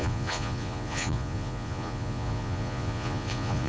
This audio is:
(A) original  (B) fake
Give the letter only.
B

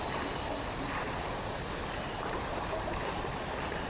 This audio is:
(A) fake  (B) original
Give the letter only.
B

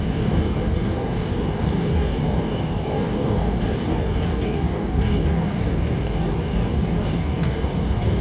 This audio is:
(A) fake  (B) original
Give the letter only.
A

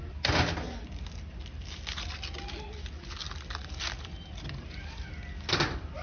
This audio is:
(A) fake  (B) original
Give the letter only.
B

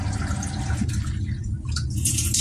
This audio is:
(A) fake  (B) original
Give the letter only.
A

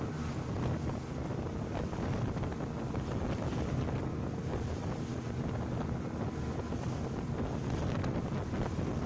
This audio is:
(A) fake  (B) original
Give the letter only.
B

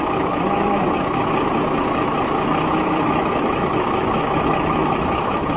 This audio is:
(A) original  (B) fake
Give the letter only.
B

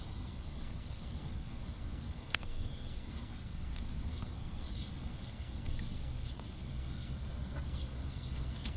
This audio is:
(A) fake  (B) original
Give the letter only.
A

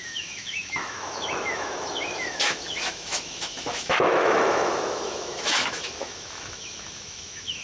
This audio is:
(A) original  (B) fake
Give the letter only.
B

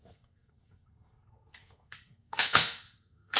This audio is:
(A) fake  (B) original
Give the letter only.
A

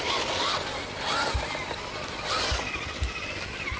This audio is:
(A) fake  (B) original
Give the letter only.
B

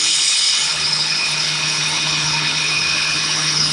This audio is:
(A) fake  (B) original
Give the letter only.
A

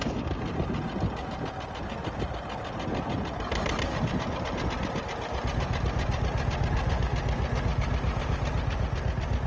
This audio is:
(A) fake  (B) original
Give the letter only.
B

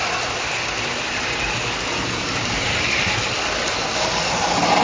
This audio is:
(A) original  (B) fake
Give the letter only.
A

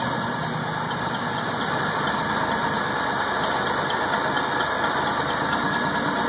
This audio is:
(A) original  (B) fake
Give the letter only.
A